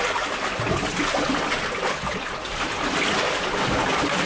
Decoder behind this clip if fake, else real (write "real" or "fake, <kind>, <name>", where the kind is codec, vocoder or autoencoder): real